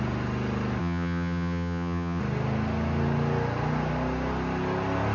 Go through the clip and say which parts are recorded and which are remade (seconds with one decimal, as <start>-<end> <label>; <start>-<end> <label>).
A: 0.0-0.8 recorded; 0.8-2.2 remade; 2.2-5.1 recorded